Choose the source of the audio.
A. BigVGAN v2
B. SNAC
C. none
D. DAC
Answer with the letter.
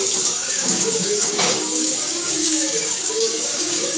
D